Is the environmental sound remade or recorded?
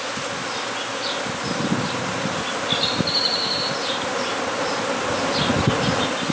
recorded